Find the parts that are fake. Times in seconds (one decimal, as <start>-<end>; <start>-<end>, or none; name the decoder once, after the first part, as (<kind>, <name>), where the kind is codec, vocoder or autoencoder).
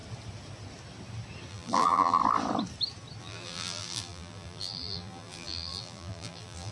1.5-2.2 (vocoder, BigVGAN v2); 3.2-6.7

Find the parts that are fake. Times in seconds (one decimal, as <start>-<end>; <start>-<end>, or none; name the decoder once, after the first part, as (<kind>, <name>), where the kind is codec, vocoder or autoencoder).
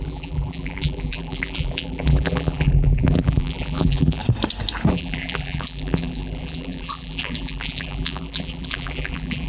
0.0-4.2 (vocoder, BigVGAN v2); 4.9-9.5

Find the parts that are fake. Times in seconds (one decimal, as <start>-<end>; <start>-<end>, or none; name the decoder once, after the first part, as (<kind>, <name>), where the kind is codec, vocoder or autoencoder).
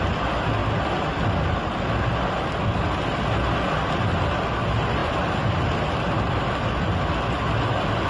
none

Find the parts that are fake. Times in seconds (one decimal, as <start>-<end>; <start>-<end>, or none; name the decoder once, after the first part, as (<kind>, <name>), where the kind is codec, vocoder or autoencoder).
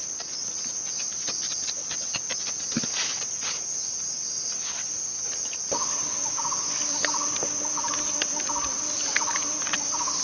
none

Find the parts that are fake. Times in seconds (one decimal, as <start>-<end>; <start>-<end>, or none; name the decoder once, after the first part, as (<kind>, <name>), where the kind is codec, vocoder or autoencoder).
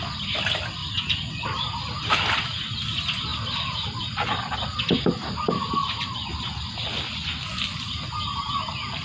0.8-2.1 (vocoder, BigVGAN v2); 3.3-4.0; 5.8-6.3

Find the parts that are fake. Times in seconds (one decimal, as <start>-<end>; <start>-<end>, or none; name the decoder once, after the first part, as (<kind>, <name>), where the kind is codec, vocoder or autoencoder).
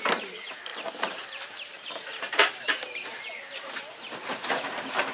0.0-5.1 (vocoder, BigVGAN v2)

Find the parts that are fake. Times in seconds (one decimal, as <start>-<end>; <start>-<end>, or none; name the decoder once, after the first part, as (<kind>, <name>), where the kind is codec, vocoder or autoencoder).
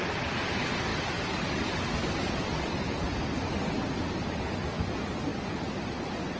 none